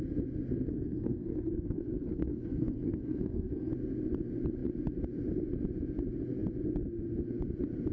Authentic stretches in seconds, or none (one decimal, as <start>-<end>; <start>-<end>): 0.0-0.7; 3.7-7.9